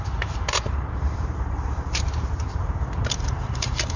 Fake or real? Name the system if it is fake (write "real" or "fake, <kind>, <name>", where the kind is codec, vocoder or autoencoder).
fake, vocoder, BigVGAN v2